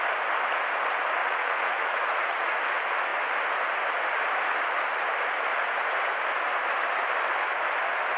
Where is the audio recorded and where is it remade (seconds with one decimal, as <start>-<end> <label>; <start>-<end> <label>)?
0.0-1.2 recorded; 1.2-2.6 remade; 2.6-8.2 recorded